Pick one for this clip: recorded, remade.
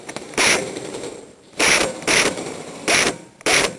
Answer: remade